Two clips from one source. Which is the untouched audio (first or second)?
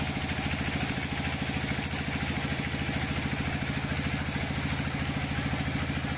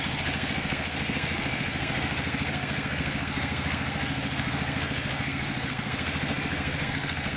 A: first